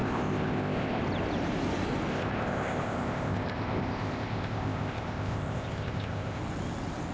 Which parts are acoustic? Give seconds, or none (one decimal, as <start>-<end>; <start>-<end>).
1.0-2.1; 6.4-7.1